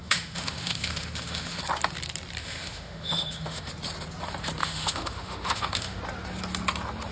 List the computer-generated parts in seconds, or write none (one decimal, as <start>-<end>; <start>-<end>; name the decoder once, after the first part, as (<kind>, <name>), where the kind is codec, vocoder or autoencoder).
0.0-1.6 (autoencoder, DAC-VAE); 2.4-3.7; 4.6-6.0